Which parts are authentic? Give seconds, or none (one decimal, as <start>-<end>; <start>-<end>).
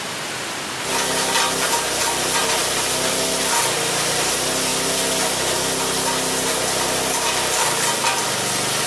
0.0-2.6; 3.1-8.9